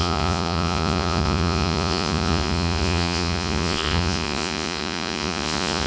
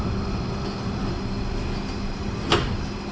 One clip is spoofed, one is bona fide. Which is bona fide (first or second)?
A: second